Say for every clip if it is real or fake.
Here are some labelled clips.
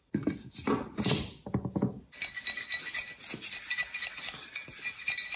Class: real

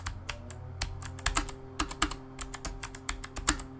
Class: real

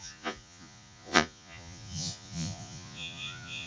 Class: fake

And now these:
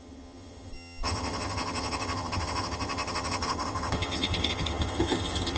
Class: fake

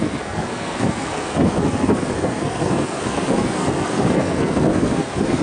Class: fake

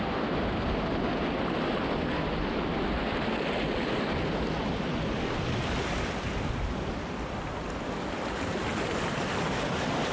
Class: real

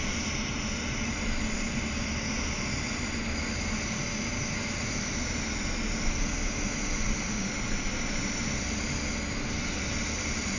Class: real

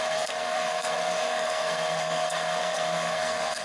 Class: fake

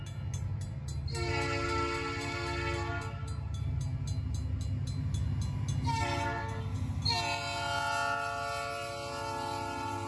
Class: real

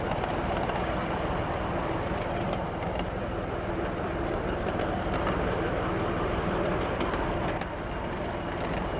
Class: real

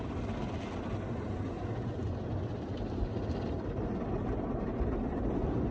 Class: real